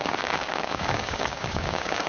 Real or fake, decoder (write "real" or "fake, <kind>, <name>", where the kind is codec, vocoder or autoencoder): fake, codec, DAC